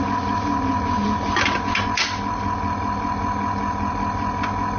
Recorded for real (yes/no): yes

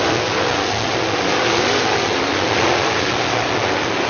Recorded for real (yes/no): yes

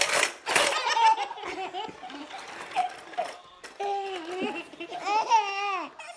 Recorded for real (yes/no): yes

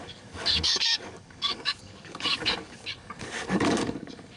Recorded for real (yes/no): no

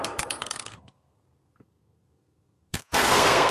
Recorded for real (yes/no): no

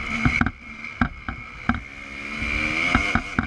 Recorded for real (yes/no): yes